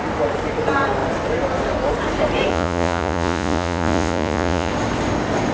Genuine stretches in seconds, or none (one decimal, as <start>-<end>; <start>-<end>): 0.0-2.5; 4.7-5.5